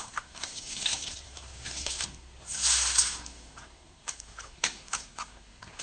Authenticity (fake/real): fake